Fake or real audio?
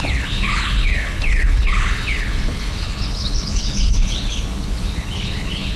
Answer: fake